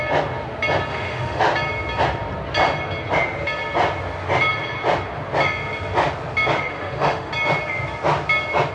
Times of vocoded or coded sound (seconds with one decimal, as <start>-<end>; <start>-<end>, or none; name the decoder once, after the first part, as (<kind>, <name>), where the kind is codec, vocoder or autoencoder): 0.9-1.4 (autoencoder, DAC-VAE); 6.7-7.3